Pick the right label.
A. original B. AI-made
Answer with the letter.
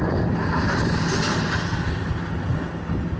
A